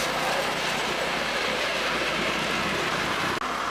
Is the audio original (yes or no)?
yes